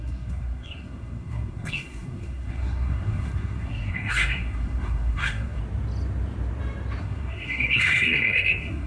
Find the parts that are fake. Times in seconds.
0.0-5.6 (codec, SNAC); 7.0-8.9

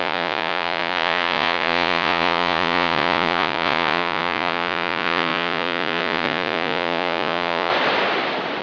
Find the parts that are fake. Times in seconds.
0.0-7.7 (vocoder, Vocos)

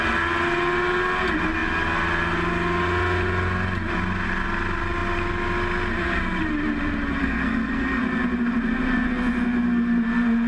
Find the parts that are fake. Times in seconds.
7.2-8.0 (codec, SNAC)

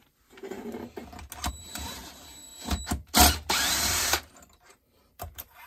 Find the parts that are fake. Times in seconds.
0.0-1.0 (vocoder, BigVGAN v2); 1.5-5.7

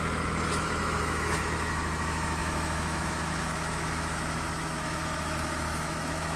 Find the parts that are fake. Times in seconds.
0.0-6.4 (autoencoder, DAC-VAE)

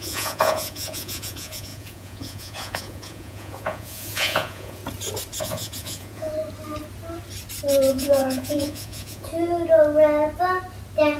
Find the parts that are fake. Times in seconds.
0.0-4.8 (vocoder, Vocos); 5.4-6.3; 7.9-9.3

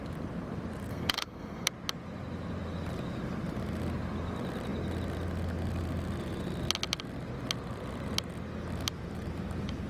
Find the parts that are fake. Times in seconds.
0.9-1.7 (codec, SNAC)

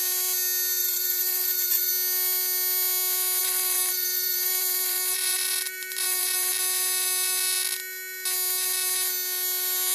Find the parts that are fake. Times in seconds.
0.8-1.9 (vocoder, BigVGAN v2); 3.4-6.5